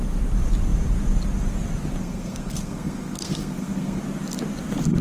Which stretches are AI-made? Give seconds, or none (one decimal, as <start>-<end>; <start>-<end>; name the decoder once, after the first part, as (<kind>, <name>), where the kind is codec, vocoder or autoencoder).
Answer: 2.0-4.0 (codec, SNAC)